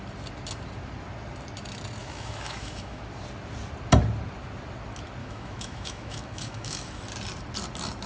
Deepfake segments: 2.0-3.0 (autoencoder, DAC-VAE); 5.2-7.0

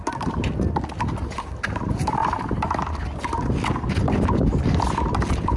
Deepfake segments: none

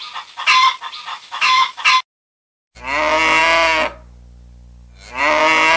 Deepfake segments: 1.1-1.8 (autoencoder, DAC-VAE)

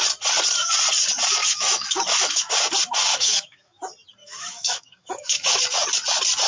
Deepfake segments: 1.4-2.5 (autoencoder, DAC-VAE); 3.1-3.8; 4.2-5.6

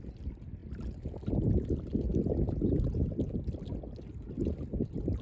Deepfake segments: none

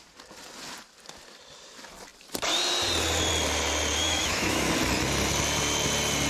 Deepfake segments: 4.0-4.7 (autoencoder, DAC-VAE)

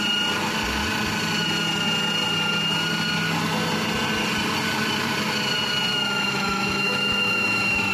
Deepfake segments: 5.9-7.9 (autoencoder, DAC-VAE)